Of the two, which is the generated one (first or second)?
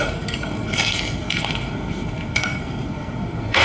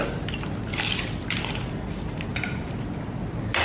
first